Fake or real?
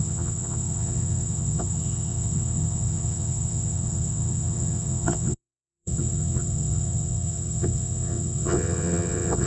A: fake